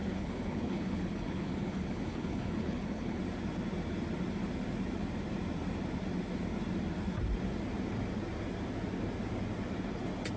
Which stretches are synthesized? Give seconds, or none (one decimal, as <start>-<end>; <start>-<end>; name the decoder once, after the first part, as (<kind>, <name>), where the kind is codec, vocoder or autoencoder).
0.0-3.2 (codec, HILCodec)